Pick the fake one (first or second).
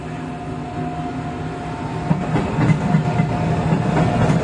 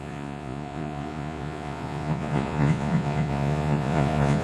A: second